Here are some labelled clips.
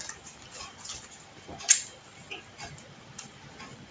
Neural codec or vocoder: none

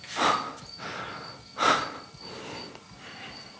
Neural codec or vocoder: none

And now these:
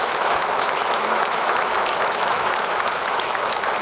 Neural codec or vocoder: autoencoder, DAC-VAE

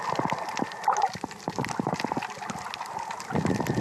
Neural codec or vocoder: none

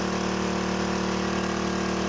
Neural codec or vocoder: none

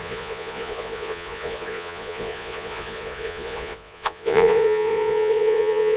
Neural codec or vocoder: vocoder, Vocos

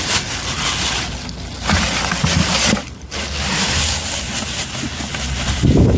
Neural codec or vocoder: none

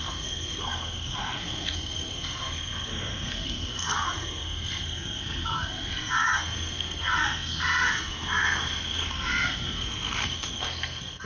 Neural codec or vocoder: codec, SNAC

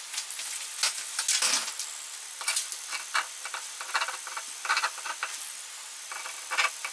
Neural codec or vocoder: none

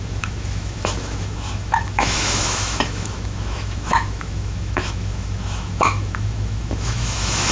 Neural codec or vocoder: autoencoder, DAC-VAE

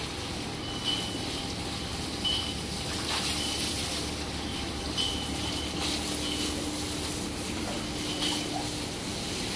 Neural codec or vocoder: none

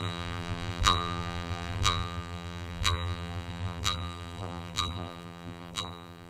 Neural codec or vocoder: vocoder, BigVGAN v2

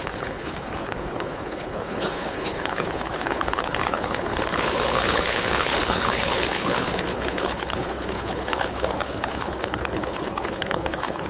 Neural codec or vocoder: codec, HILCodec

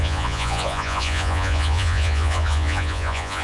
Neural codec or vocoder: vocoder, Vocos